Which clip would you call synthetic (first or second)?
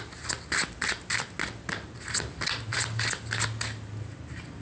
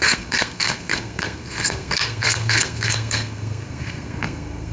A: second